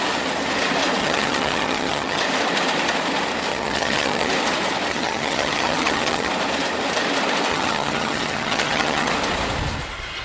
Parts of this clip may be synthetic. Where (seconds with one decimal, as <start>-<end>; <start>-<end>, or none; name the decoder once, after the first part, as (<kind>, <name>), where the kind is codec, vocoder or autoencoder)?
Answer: 1.0-2.2 (vocoder, HiFi-GAN); 3.5-4.3; 4.9-6.3; 7.5-9.1